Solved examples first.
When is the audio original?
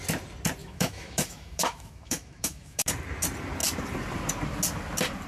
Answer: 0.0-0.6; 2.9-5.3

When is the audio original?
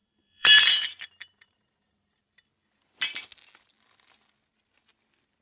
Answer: 2.2-5.4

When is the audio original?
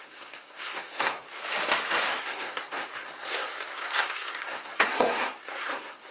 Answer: 1.4-2.2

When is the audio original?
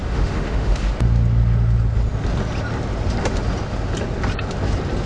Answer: 0.9-5.1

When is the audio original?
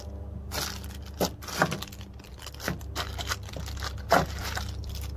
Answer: 0.0-5.2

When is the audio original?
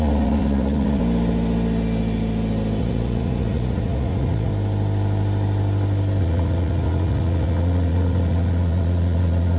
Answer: 1.0-2.8; 4.5-6.2